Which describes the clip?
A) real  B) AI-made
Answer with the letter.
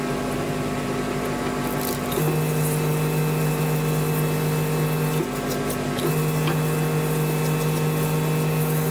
A